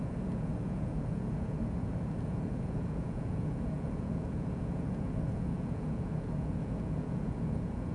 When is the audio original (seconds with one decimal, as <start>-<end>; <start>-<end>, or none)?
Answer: none